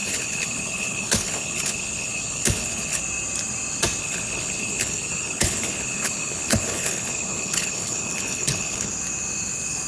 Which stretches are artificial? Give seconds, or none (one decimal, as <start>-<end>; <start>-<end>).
0.0-3.0; 4.0-8.9